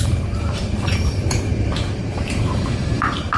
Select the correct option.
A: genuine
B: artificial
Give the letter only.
B